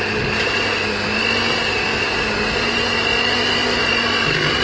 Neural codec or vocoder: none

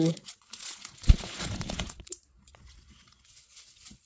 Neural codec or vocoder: vocoder, Vocos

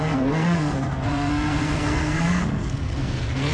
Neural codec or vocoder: codec, SNAC